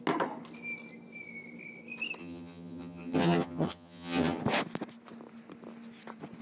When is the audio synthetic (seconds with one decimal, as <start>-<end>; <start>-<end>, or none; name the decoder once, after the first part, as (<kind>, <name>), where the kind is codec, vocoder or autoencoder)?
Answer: 2.2-4.4 (vocoder, HiFi-GAN)